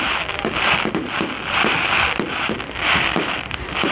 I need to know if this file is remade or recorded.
remade